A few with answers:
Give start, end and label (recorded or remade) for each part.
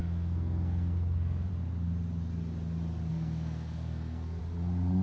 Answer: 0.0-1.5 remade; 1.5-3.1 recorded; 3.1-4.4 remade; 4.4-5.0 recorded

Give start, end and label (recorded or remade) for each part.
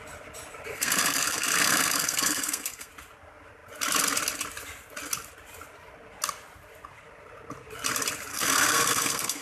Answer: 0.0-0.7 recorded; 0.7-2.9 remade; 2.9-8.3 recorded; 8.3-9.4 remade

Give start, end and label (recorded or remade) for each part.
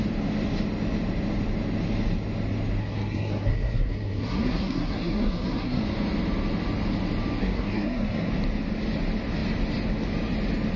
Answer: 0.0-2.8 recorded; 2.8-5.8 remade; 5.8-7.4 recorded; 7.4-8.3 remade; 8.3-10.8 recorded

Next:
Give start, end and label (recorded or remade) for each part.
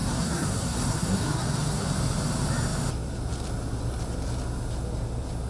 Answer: 0.0-1.9 remade; 1.9-5.5 recorded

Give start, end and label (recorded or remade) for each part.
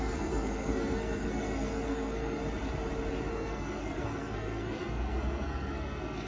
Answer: 0.0-2.4 remade; 2.4-3.3 recorded; 3.3-6.3 remade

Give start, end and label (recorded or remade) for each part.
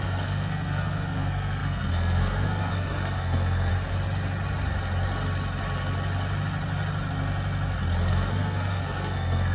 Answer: 0.0-3.7 remade; 3.7-8.1 recorded; 8.1-9.5 remade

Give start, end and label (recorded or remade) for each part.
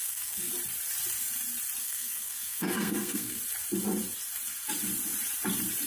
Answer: 0.0-0.5 remade; 0.5-1.8 recorded; 1.8-3.4 remade; 3.4-5.9 recorded